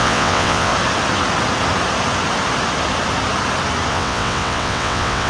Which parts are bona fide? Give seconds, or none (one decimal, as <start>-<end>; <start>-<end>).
0.7-3.9